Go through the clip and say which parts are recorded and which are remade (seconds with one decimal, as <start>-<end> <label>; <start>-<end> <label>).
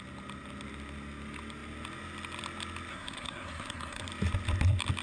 0.0-2.9 recorded; 2.9-4.1 remade; 4.1-5.0 recorded